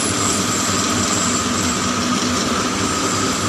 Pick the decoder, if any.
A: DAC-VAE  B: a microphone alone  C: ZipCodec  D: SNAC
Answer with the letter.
B